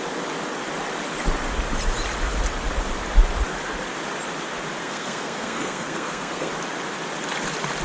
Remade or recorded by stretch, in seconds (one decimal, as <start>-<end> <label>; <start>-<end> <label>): 0.0-4.8 recorded; 4.8-6.5 remade; 6.5-7.8 recorded